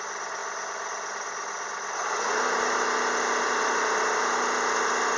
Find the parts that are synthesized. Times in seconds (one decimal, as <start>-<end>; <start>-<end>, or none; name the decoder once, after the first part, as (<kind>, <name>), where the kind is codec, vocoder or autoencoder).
none